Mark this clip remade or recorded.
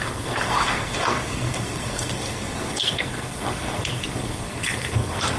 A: remade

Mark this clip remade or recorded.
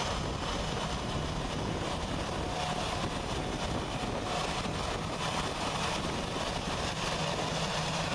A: recorded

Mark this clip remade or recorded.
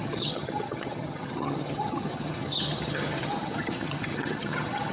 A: remade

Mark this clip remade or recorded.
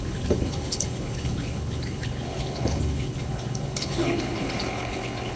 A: remade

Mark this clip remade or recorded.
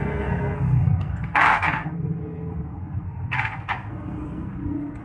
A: remade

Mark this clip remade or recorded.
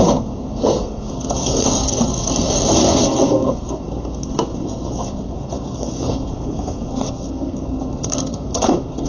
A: remade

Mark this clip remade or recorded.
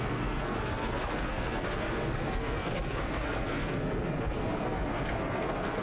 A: remade